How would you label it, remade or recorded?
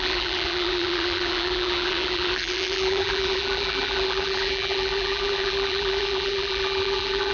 remade